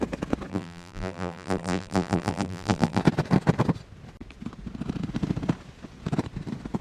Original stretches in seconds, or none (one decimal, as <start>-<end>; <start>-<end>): 0.0-0.5; 3.0-6.8

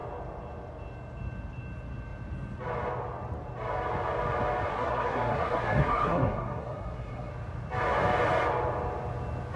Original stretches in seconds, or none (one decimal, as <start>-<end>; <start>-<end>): 0.0-4.7; 7.3-9.6

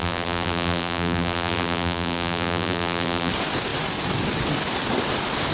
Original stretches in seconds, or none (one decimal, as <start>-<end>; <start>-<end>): 3.3-5.5

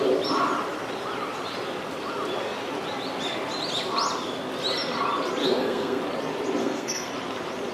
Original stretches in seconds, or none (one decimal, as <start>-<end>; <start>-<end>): 0.0-5.4; 6.0-6.6; 7.1-7.7